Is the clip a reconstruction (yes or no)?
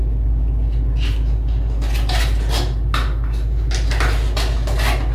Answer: no